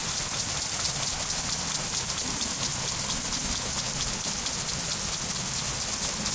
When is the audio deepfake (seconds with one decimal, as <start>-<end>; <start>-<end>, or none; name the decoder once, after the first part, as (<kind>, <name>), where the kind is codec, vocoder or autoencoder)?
0.0-1.6 (vocoder, BigVGAN v2); 2.7-6.3